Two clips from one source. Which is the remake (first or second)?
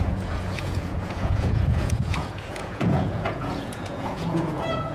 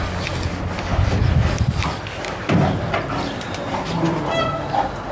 first